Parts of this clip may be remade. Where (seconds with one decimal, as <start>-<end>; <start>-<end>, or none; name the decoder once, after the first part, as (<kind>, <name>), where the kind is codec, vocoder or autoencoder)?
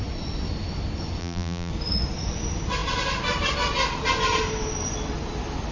1.2-1.7 (vocoder, BigVGAN v2)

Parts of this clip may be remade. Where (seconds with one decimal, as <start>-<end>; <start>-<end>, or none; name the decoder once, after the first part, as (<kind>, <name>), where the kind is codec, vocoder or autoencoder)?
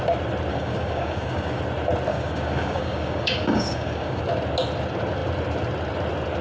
0.5-1.6 (codec, DAC); 2.1-4.2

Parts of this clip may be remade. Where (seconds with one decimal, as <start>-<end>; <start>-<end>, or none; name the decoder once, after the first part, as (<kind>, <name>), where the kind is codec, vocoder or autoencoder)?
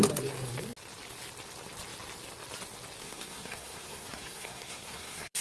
3.0-5.4 (codec, SNAC)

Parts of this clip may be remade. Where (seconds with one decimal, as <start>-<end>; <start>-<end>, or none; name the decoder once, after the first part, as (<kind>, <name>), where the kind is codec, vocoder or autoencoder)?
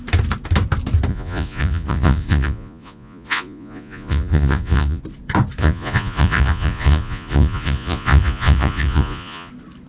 1.1-5.0 (vocoder, Vocos); 5.6-9.5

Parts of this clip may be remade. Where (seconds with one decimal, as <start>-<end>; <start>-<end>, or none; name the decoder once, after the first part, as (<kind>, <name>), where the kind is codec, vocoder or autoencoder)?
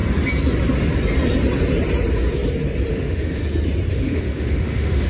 2.9-3.4 (autoencoder, DAC-VAE); 3.9-5.1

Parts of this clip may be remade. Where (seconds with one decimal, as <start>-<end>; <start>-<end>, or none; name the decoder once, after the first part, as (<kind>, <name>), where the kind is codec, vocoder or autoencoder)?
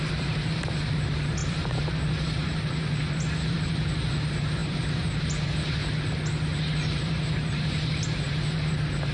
0.0-5.8 (vocoder, BigVGAN v2); 6.9-9.1